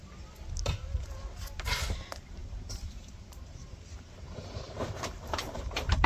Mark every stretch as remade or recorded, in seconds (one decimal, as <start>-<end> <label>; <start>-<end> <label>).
0.0-2.4 recorded; 2.4-6.1 remade